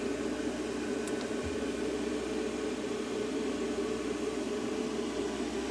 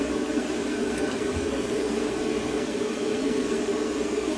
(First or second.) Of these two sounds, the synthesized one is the second